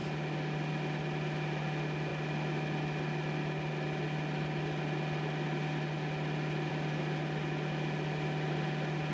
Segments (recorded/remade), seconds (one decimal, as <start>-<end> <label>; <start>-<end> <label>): 0.0-9.1 recorded